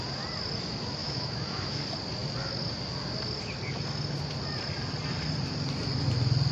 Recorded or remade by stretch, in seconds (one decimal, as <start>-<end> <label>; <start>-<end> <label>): 0.0-1.0 recorded; 1.0-1.8 remade; 1.8-6.5 recorded